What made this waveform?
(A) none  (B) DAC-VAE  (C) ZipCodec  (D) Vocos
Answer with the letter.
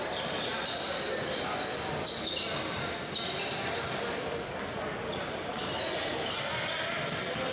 A